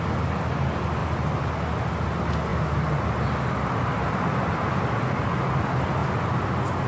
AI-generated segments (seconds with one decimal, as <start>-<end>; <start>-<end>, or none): none